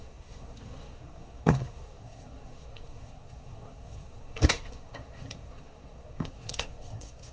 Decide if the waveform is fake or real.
fake